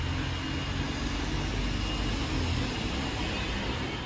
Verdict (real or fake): real